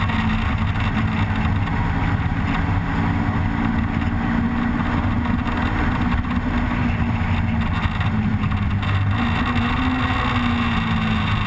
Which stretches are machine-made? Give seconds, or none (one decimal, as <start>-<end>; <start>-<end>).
none